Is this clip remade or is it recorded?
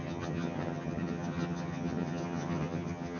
remade